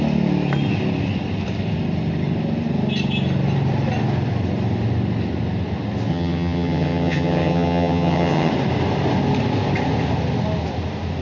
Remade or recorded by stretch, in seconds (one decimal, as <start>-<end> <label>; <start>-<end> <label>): 0.0-6.1 recorded; 6.1-8.5 remade; 8.5-11.2 recorded

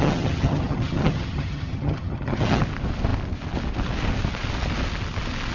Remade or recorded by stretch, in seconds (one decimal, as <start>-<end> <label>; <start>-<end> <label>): 0.0-2.6 remade; 2.6-5.5 recorded

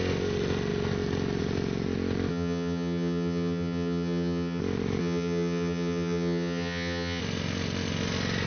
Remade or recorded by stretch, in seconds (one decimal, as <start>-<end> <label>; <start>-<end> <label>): 0.0-2.3 recorded; 2.3-4.6 remade; 4.6-5.0 recorded; 5.0-7.2 remade; 7.2-8.5 recorded